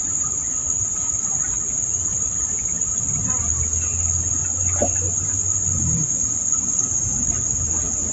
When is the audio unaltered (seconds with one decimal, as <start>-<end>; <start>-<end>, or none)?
0.0-4.4; 5.1-8.1